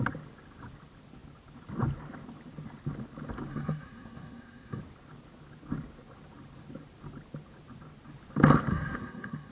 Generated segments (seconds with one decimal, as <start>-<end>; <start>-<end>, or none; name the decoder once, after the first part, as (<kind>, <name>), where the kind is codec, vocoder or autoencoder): 3.5-4.8 (codec, SNAC); 8.7-9.5